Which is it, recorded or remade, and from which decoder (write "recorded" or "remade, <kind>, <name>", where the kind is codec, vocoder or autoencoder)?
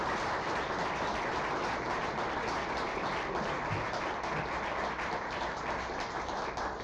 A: recorded